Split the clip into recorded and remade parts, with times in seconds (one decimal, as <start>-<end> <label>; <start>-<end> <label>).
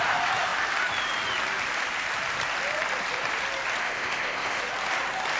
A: 0.0-3.8 recorded; 3.8-4.6 remade; 4.6-5.4 recorded